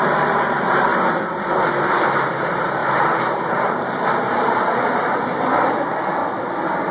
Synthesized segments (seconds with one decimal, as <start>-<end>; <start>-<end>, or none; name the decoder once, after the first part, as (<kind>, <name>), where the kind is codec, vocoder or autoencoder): 0.0-0.9 (vocoder, BigVGAN v2); 1.7-2.8; 3.5-6.2